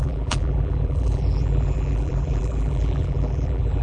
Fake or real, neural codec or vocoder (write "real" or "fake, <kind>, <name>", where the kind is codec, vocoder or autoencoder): fake, vocoder, BigVGAN v2